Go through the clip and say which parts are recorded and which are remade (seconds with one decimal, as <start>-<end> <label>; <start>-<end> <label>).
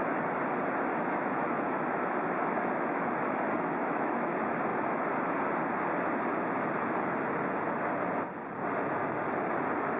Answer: 0.0-0.9 recorded; 0.9-4.3 remade; 4.3-10.0 recorded